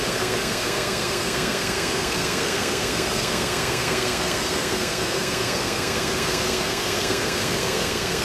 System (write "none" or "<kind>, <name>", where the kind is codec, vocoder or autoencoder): codec, SNAC